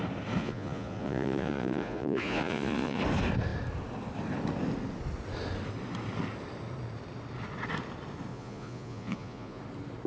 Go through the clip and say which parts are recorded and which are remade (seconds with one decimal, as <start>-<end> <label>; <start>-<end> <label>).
0.0-0.4 recorded; 0.4-3.0 remade; 3.0-8.3 recorded; 8.3-9.6 remade; 9.6-10.1 recorded